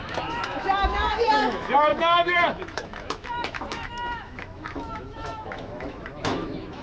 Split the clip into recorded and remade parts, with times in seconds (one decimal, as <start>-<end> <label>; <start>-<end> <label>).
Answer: 0.0-6.8 remade